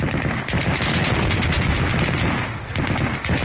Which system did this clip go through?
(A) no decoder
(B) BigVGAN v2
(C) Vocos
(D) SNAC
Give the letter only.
A